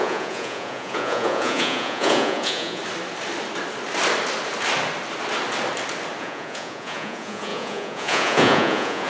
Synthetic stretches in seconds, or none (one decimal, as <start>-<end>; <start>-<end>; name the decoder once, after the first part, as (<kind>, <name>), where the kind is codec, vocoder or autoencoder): 0.0-2.8 (vocoder, Vocos); 6.2-9.1